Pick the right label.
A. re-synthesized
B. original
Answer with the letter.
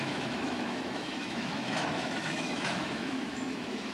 A